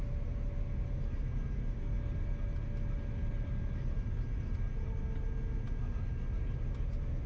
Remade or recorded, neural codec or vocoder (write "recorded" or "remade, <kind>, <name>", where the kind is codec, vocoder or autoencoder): recorded